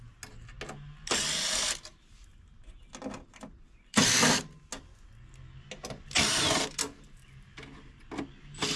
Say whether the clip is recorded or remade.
recorded